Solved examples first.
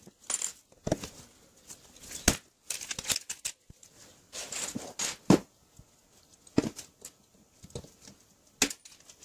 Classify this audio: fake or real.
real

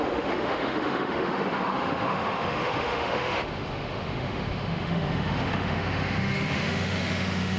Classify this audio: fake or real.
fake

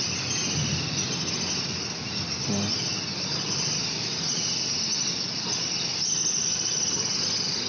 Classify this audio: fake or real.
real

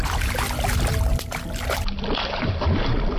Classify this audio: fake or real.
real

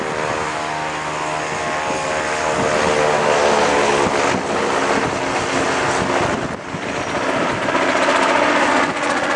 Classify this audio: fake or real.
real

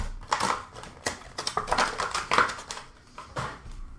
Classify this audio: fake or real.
real